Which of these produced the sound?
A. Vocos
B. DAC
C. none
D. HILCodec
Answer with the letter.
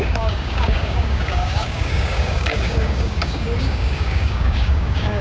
B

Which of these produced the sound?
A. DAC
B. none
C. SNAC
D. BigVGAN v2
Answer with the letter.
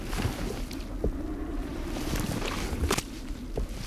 B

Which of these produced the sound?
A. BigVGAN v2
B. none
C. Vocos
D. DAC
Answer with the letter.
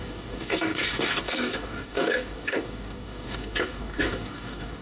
D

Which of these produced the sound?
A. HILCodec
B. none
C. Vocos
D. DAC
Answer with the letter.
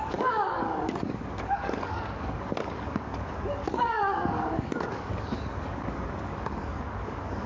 D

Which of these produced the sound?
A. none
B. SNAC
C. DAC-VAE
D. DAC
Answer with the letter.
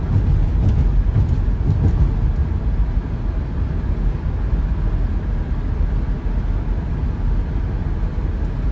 A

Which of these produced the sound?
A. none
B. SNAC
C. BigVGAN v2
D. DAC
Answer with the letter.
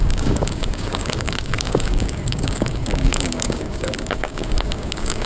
D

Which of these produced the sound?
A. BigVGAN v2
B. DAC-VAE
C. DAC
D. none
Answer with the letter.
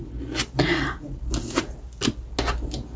D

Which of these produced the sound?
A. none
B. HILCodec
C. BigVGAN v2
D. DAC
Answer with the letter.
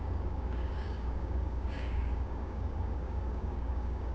D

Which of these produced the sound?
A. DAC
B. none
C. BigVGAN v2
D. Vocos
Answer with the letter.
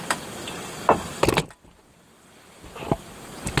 B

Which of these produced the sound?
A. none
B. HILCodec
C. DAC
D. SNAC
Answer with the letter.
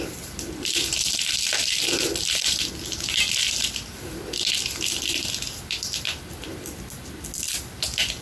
A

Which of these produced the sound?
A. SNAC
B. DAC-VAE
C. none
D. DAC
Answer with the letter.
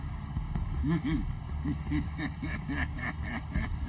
D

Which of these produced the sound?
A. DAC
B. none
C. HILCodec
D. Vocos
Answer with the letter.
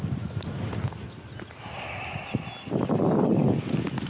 B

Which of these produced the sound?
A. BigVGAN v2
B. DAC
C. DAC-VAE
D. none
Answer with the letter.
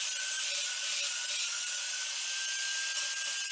D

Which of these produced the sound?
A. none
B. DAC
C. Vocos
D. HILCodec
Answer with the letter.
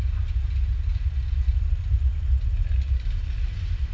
A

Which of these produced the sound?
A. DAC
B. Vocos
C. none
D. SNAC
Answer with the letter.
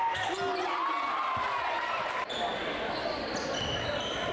C